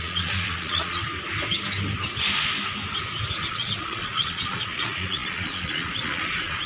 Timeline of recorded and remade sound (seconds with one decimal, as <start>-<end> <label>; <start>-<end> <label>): 0.0-1.0 remade; 1.0-3.5 recorded; 3.5-6.7 remade